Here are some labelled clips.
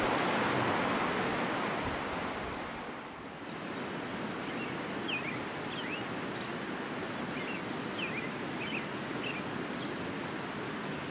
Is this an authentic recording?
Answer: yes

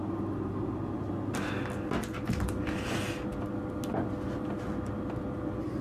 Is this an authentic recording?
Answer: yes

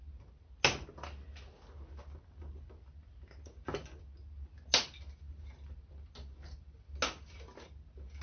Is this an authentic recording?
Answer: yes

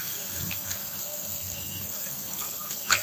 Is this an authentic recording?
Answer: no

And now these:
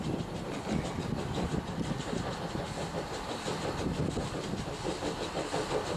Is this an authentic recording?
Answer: yes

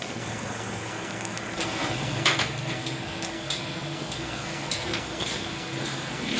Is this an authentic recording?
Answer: no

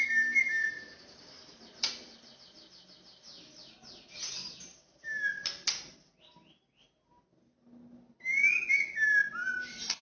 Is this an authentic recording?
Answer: yes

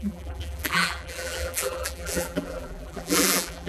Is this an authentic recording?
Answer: no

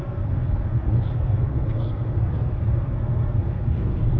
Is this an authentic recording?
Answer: no